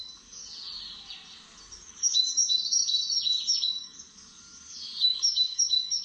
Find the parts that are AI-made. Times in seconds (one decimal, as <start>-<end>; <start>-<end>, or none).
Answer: 0.0-0.4; 2.0-2.8; 3.7-6.0